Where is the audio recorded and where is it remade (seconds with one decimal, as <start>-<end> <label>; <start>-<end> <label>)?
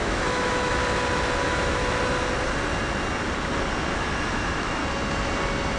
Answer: 0.0-0.8 remade; 0.8-1.4 recorded; 1.4-1.8 remade; 1.8-3.9 recorded; 3.9-4.8 remade; 4.8-5.8 recorded